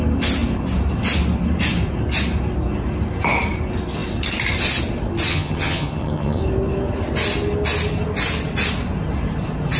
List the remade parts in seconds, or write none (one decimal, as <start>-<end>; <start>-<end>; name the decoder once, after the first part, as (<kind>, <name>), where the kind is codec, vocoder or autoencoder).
5.3-6.4 (vocoder, HiFi-GAN)